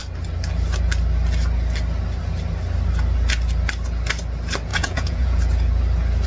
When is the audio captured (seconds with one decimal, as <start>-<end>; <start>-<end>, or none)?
0.0-4.7; 5.4-6.3